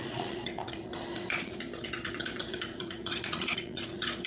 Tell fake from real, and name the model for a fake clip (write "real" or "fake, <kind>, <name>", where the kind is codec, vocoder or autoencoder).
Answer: fake, vocoder, Vocos